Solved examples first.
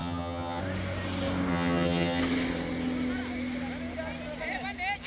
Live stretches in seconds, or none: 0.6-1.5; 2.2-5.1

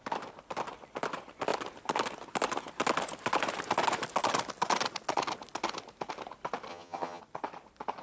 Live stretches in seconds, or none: 0.0-6.7; 7.2-8.0

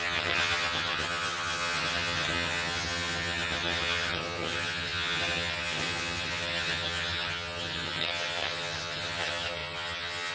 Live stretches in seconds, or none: none

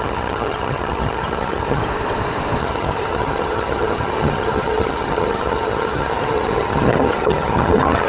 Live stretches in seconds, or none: 1.8-2.6

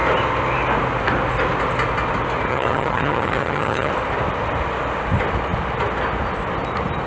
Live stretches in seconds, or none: 0.0-2.5; 3.9-7.1

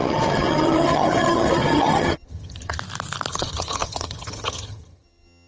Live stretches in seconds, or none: 2.8-3.3